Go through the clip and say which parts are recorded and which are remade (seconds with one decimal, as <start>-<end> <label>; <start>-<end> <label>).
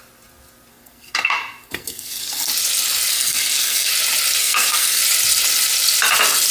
0.0-0.7 recorded; 0.7-2.5 remade; 2.5-3.1 recorded; 3.1-3.9 remade; 3.9-4.4 recorded; 4.4-5.0 remade; 5.0-6.5 recorded